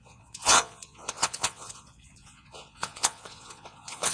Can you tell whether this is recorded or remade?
remade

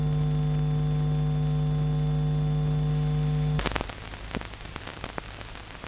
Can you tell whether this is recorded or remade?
recorded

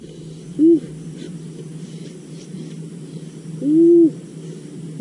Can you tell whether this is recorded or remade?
recorded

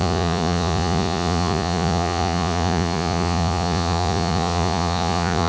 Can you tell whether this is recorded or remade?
remade